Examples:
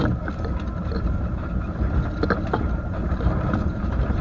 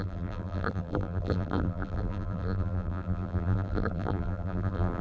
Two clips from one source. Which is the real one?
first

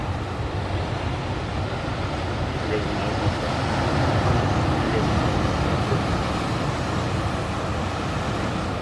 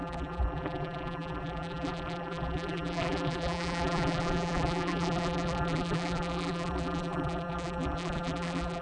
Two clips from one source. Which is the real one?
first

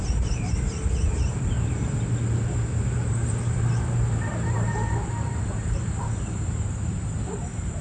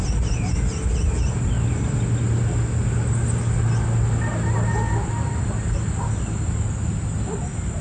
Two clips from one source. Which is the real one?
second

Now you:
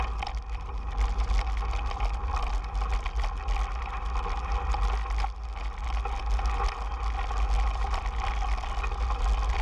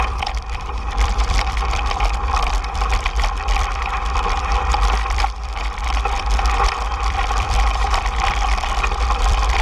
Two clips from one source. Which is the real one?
first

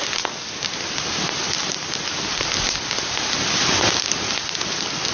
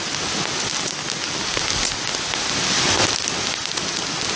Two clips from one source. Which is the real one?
second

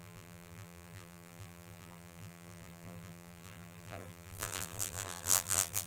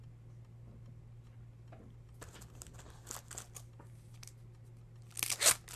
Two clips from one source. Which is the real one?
second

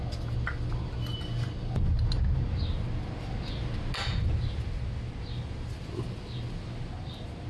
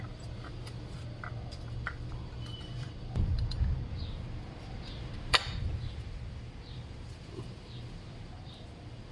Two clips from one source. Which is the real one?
first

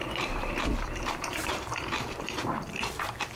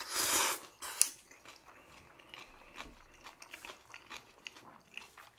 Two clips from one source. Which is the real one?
second